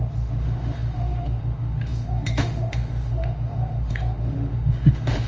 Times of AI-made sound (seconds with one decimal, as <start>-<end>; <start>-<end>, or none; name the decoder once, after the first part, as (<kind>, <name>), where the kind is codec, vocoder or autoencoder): 0.0-5.3 (autoencoder, DAC-VAE)